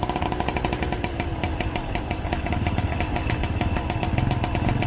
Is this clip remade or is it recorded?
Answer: recorded